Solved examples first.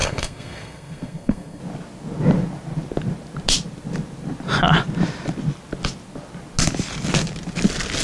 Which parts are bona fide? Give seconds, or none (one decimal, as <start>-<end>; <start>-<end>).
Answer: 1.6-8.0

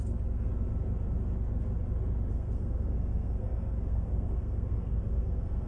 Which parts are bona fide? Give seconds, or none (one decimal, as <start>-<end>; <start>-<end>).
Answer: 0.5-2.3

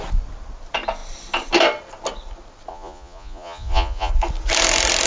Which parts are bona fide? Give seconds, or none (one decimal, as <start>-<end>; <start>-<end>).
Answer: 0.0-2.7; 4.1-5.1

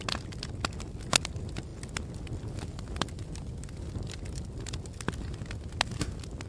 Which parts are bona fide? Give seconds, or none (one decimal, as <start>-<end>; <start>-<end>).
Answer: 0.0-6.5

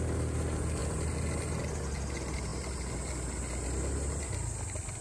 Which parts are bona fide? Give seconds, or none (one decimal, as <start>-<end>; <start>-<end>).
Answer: 0.0-5.0

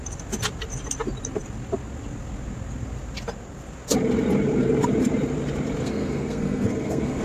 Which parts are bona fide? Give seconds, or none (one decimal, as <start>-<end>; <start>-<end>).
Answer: 0.0-5.8

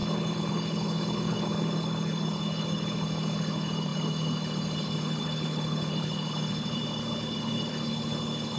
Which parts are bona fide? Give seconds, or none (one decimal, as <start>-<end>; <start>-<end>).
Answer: none

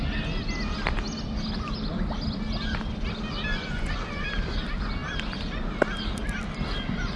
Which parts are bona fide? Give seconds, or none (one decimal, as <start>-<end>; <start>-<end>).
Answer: 0.0-3.5; 4.2-7.2